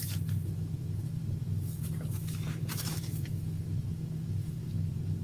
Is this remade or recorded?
remade